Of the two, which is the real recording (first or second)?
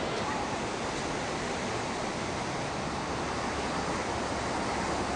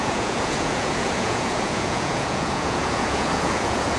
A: first